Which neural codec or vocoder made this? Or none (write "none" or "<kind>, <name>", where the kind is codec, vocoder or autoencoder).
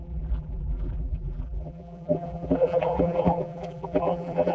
vocoder, BigVGAN v2